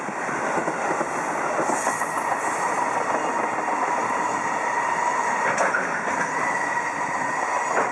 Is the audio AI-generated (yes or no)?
no